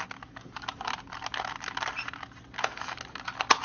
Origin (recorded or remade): recorded